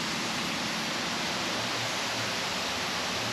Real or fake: real